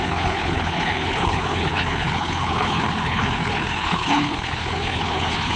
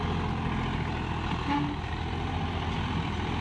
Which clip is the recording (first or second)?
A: second